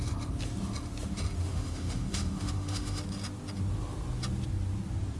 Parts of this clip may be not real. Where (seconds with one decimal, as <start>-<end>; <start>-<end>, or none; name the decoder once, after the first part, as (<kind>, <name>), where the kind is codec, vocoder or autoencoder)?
1.5-3.0 (autoencoder, DAC-VAE)